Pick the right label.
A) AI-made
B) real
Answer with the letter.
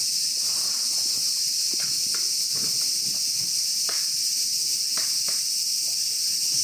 B